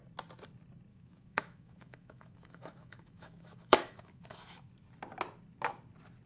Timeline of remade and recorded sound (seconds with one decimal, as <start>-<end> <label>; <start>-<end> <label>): 0.0-0.9 recorded; 0.9-4.7 remade; 4.7-6.3 recorded